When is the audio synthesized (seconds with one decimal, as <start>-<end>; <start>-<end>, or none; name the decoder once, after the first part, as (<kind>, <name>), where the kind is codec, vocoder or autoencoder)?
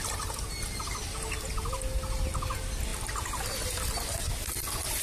none